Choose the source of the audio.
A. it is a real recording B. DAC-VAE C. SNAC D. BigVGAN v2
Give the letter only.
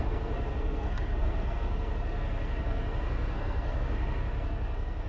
C